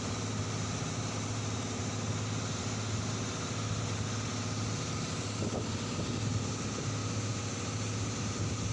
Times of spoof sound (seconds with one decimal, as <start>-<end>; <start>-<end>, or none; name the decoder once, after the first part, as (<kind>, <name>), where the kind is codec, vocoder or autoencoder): none